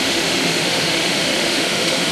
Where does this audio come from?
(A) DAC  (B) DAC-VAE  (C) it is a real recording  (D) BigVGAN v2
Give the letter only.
B